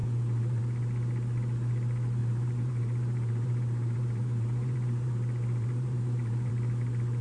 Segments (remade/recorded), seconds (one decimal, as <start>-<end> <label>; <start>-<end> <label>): 0.0-0.6 remade; 0.6-2.2 recorded; 2.2-6.5 remade; 6.5-7.2 recorded